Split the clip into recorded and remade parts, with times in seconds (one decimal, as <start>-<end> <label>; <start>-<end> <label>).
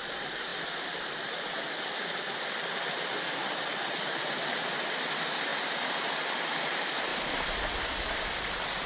0.0-5.5 remade; 5.5-6.4 recorded; 6.4-8.9 remade